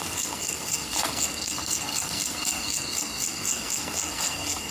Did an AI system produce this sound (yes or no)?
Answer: yes